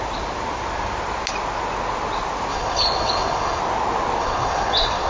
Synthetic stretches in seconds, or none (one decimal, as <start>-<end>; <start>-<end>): 2.5-3.6; 4.2-5.1